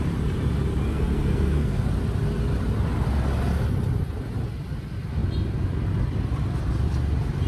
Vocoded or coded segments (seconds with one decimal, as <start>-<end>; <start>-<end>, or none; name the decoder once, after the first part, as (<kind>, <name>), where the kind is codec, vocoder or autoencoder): 0.9-1.9 (codec, SNAC)